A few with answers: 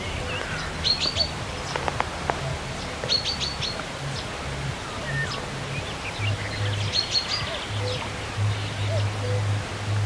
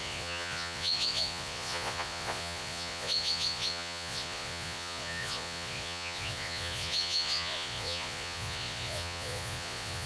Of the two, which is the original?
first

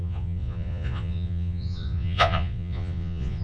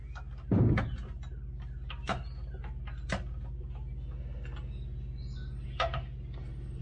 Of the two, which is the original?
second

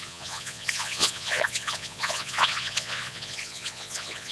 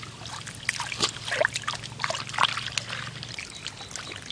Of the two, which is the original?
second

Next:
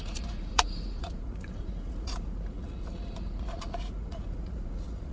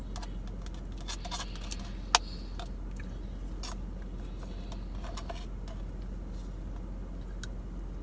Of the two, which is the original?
second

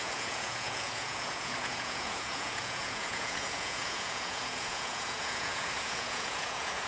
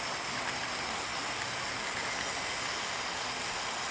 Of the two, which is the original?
second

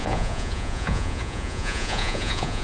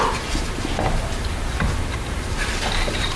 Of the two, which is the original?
second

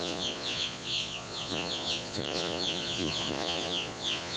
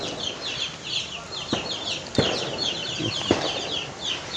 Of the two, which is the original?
second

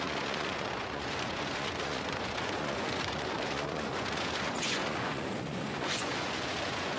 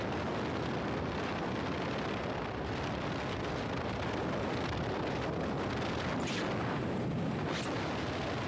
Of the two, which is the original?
second